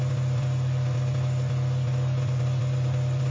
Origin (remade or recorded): recorded